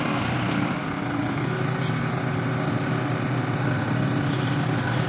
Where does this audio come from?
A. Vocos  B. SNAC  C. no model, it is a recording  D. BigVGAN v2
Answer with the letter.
C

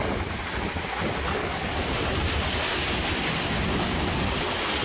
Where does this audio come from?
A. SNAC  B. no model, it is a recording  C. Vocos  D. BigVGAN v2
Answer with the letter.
B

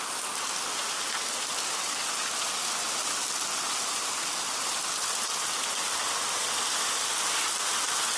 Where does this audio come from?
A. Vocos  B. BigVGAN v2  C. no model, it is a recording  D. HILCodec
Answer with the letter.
C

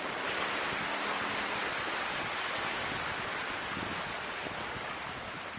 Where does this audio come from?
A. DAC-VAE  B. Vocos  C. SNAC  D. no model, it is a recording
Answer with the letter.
D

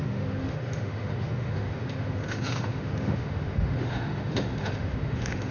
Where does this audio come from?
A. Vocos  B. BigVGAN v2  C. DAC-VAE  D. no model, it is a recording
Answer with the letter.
C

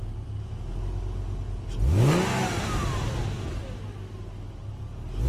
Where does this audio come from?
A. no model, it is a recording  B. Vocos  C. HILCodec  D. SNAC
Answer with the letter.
A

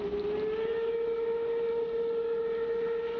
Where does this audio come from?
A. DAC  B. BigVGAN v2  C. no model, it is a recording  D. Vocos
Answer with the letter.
C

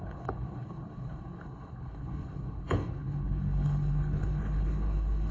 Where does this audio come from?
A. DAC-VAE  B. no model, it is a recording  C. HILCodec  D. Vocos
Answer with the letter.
C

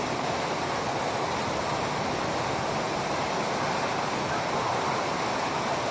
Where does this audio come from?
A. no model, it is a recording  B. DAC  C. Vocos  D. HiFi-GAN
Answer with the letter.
A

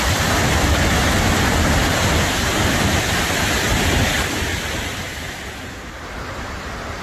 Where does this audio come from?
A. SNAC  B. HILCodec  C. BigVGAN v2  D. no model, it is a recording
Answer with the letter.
D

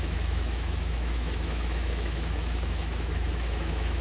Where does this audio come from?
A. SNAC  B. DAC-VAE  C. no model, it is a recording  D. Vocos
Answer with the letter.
B